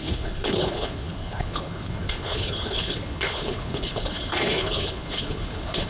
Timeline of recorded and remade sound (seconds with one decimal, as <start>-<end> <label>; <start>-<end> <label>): 0.0-5.9 remade